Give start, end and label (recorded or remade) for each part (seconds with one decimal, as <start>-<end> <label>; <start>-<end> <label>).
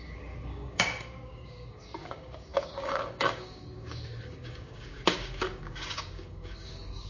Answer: 0.0-7.1 remade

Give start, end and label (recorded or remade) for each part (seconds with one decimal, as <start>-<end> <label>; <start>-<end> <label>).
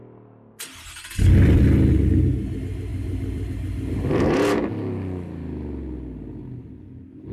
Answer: 0.0-2.9 recorded; 2.9-4.1 remade; 4.1-7.3 recorded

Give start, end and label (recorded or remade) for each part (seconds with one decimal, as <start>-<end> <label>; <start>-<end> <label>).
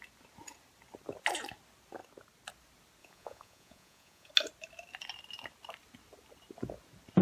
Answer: 0.0-3.0 recorded; 3.0-4.3 remade; 4.3-7.2 recorded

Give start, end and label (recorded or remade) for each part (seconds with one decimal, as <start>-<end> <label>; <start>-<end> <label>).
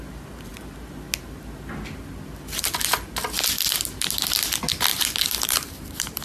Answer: 0.0-4.9 recorded; 4.9-6.2 remade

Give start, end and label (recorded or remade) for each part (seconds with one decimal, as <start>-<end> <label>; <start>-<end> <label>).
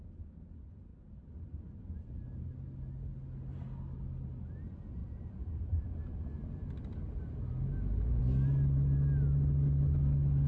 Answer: 0.0-0.9 recorded; 0.9-1.8 remade; 1.8-5.0 recorded; 5.0-5.9 remade; 5.9-10.5 recorded